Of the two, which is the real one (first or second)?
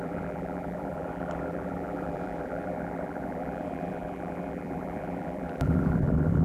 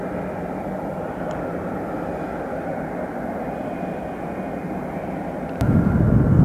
second